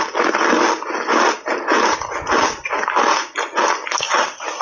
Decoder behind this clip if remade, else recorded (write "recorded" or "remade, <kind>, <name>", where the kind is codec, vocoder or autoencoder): recorded